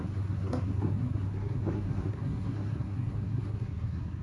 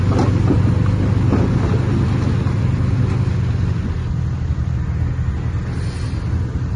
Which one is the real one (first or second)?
second